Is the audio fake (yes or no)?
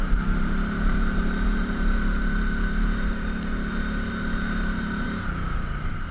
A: yes